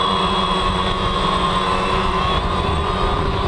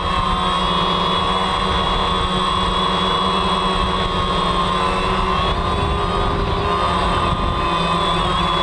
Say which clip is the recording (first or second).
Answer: second